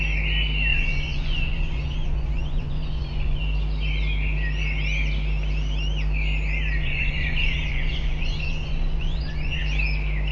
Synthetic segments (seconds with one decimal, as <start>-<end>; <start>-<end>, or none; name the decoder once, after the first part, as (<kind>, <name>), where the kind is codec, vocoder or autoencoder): 0.7-3.4 (vocoder, Vocos); 6.8-9.6